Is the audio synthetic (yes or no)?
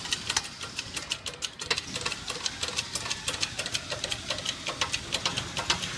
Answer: no